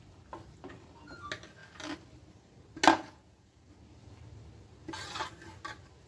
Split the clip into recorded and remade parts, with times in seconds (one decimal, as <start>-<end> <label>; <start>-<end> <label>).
0.0-2.9 recorded; 2.9-3.7 remade; 3.7-6.1 recorded